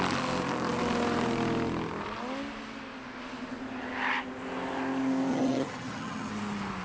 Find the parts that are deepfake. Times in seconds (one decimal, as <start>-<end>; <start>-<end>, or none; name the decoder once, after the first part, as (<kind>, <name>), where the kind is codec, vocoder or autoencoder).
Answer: 5.3-6.3 (vocoder, HiFi-GAN)